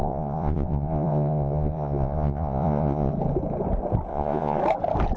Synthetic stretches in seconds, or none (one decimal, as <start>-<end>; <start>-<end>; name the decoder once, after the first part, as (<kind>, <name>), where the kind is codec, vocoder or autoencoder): 0.0-3.1 (vocoder, Vocos); 4.1-4.6